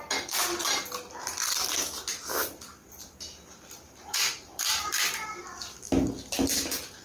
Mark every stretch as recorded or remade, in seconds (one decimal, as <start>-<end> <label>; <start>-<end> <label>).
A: 0.0-2.8 recorded; 2.8-5.4 remade; 5.4-7.0 recorded